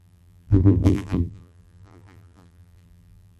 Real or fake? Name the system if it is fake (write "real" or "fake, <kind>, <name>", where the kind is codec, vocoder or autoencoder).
fake, vocoder, BigVGAN v2